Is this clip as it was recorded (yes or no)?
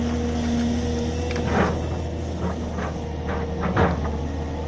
yes